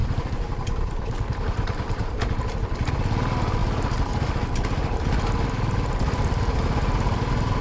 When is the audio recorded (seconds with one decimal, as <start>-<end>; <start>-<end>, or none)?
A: 2.9-7.6